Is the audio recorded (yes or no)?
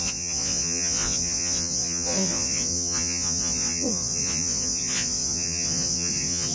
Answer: no